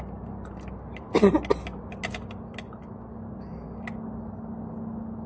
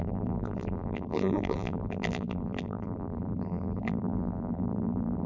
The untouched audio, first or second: first